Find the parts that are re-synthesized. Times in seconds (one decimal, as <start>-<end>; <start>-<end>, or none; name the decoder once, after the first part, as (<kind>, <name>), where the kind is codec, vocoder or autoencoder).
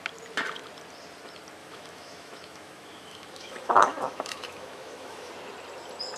1.6-5.3 (autoencoder, DAC-VAE)